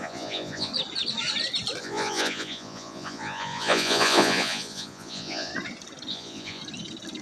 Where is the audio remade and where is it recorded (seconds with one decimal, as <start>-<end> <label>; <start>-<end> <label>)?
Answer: 0.0-0.7 remade; 0.7-1.8 recorded; 1.8-5.5 remade; 5.5-6.1 recorded; 6.1-6.6 remade; 6.6-7.2 recorded